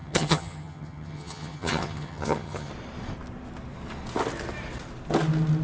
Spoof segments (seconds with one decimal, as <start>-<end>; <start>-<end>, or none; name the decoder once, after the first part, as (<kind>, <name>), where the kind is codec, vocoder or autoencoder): 0.0-2.7 (vocoder, HiFi-GAN)